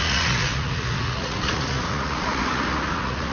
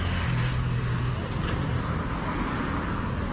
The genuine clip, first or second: second